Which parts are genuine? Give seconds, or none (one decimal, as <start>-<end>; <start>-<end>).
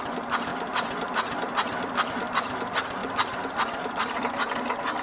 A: 0.0-5.0